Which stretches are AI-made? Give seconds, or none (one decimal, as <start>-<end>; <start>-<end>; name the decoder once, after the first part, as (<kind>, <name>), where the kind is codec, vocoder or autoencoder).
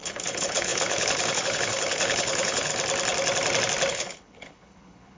0.0-2.7 (codec, HILCodec); 3.9-5.2